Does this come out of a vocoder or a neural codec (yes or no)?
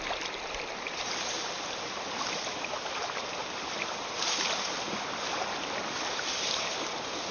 yes